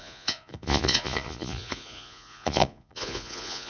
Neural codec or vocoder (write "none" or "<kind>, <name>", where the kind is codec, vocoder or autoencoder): vocoder, Vocos